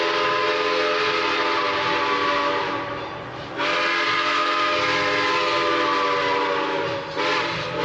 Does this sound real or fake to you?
real